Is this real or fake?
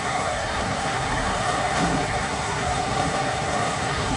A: fake